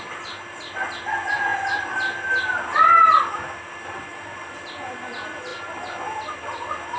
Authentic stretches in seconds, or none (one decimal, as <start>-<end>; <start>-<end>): 0.0-7.0